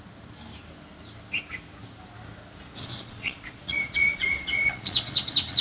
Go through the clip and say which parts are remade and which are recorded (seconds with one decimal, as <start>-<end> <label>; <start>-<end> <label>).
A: 0.0-2.8 recorded; 2.8-5.6 remade